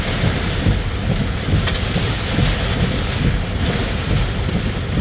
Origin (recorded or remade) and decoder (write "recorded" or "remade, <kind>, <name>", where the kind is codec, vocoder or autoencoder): recorded